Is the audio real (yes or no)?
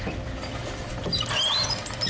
yes